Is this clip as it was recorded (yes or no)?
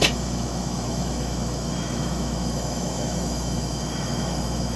no